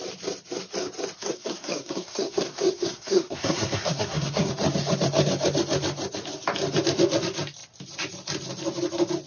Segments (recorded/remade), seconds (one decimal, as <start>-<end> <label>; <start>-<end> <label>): 0.0-1.2 recorded; 1.2-4.5 remade; 4.5-9.3 recorded

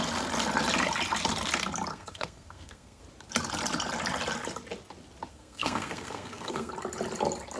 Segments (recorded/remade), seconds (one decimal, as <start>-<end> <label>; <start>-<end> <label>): 0.0-1.9 recorded; 1.9-3.0 remade; 3.0-5.3 recorded; 5.3-6.7 remade; 6.7-7.6 recorded

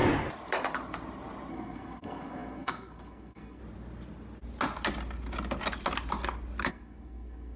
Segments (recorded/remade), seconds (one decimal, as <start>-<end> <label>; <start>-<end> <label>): 0.0-1.5 recorded; 1.5-3.6 remade; 3.6-6.7 recorded; 6.7-7.6 remade

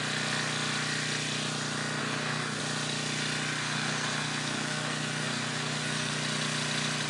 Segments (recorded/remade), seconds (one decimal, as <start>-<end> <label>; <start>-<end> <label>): 0.0-2.0 recorded; 2.0-2.6 remade; 2.6-3.6 recorded; 3.6-6.1 remade; 6.1-7.1 recorded

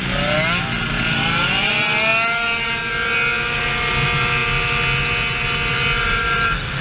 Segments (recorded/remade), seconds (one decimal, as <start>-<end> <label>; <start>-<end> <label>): 0.0-6.8 recorded

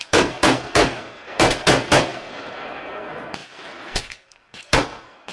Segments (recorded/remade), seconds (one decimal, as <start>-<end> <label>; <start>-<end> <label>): 0.0-5.3 remade